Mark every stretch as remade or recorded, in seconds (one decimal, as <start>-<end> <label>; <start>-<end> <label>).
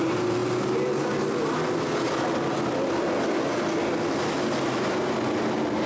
0.0-5.9 recorded